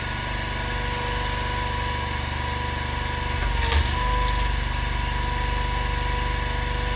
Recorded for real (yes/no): yes